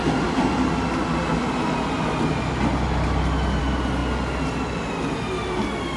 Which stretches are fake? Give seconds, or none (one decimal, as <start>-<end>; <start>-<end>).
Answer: none